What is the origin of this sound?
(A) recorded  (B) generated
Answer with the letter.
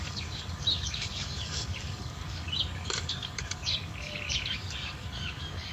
B